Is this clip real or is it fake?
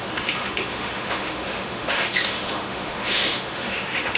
fake